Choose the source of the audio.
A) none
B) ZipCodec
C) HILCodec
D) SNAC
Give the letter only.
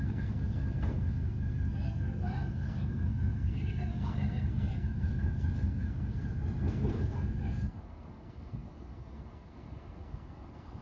D